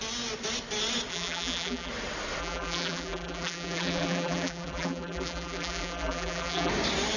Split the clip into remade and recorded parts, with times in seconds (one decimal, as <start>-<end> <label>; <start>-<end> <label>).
0.0-1.1 recorded; 1.1-1.9 remade; 1.9-2.4 recorded; 2.4-6.7 remade; 6.7-7.2 recorded